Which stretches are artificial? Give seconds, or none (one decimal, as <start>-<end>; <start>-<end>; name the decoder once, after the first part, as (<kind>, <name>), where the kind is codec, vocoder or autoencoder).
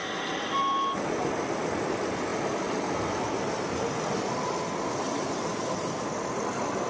0.0-0.6 (vocoder, BigVGAN v2); 5.5-6.9